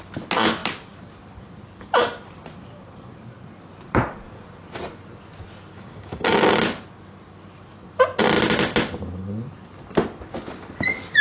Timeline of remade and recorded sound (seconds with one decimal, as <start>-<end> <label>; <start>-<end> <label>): 0.0-5.7 recorded; 5.7-6.6 remade; 6.6-11.2 recorded